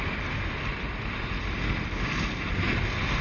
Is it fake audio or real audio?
real